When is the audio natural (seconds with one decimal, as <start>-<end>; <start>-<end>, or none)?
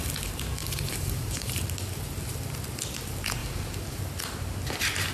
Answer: 0.0-0.6; 1.7-3.4; 4.0-5.1